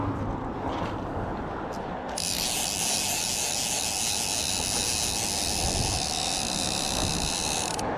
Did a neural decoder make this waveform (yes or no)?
no